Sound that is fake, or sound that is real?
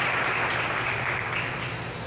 real